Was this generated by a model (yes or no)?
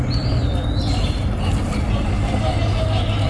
no